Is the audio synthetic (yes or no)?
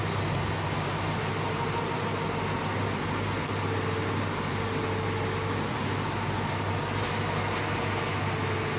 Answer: no